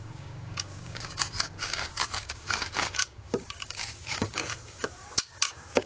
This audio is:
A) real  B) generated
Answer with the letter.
B